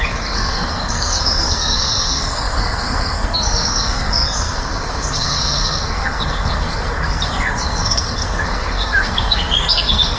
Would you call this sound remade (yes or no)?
yes